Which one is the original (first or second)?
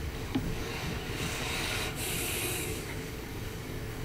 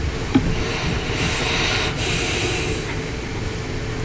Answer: second